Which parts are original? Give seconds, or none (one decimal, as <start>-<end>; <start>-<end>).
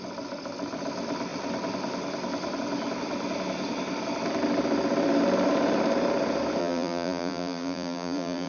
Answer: 0.0-6.6